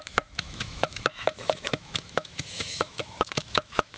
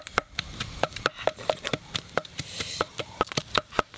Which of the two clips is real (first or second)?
second